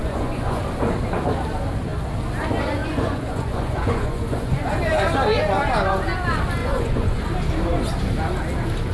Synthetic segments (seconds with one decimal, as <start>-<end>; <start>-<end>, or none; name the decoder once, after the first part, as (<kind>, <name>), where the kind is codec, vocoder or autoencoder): 0.0-0.6 (vocoder, Vocos); 2.8-4.8; 6.6-7.2